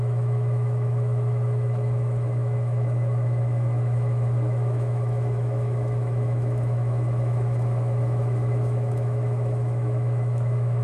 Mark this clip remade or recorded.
remade